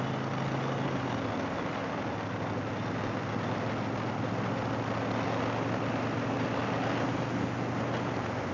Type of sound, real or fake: real